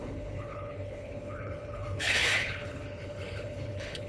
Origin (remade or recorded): remade